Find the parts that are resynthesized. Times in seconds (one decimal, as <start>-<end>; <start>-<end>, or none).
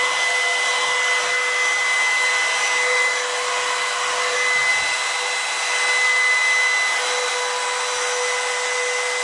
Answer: none